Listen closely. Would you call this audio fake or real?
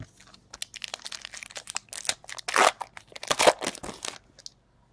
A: real